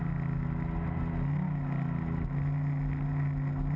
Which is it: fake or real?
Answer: real